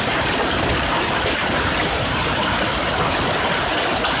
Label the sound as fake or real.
real